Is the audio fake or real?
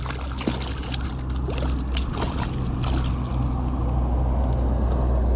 real